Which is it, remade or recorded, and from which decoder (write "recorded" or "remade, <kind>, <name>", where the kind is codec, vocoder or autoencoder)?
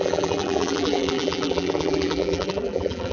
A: remade, vocoder, BigVGAN v2